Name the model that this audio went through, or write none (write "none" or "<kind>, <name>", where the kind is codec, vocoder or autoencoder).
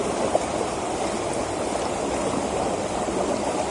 none